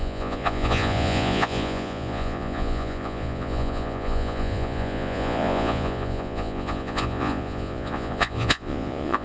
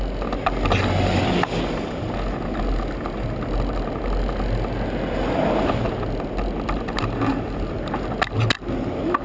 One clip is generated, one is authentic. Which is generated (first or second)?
first